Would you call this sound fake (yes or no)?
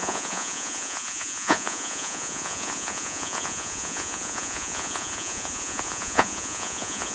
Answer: yes